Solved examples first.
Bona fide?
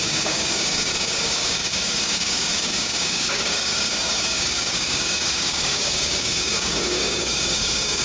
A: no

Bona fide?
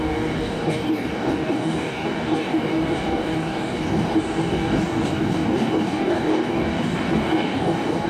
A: no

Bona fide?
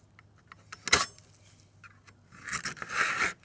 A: yes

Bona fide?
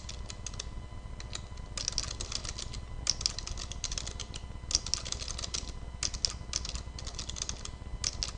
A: yes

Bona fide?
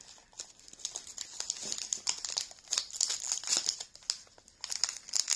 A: yes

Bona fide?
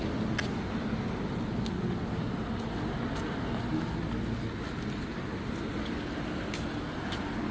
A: yes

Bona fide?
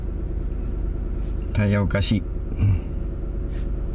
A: yes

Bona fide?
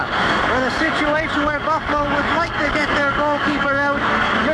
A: no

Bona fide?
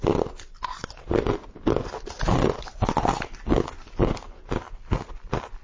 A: yes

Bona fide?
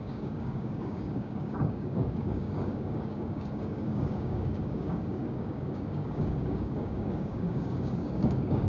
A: no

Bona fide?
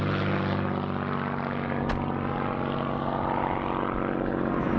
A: yes